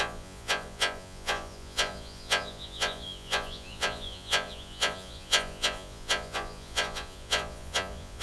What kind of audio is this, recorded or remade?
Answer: remade